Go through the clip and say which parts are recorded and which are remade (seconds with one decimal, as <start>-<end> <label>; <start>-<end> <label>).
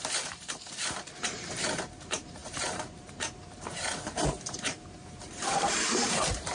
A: 0.0-6.5 remade